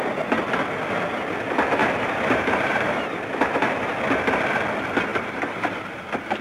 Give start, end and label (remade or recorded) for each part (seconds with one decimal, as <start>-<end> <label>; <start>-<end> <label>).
0.0-1.8 recorded; 1.8-3.8 remade; 3.8-5.1 recorded; 5.1-5.9 remade; 5.9-6.4 recorded